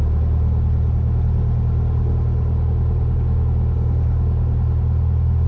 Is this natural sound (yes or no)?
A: yes